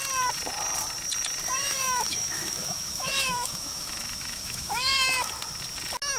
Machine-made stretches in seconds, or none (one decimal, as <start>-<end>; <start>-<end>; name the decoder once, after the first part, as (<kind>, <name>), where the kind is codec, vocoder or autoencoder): 1.6-5.3 (autoencoder, DAC-VAE)